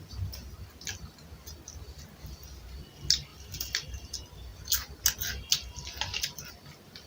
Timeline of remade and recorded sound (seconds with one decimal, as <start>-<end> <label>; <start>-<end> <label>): 0.0-3.3 recorded; 3.3-4.0 remade; 4.0-7.1 recorded